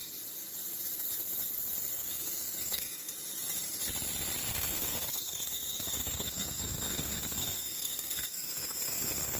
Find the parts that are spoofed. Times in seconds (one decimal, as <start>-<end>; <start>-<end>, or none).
1.9-3.1; 4.5-9.4